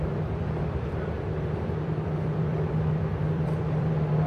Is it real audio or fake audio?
fake